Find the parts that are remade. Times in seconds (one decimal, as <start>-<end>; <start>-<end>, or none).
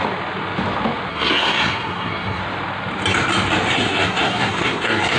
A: 1.1-2.4; 3.7-5.2